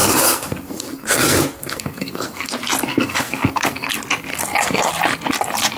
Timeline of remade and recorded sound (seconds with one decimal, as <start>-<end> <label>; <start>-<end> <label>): 0.0-2.5 remade; 2.5-2.9 recorded; 2.9-3.9 remade; 3.9-4.3 recorded; 4.3-4.9 remade; 4.9-5.8 recorded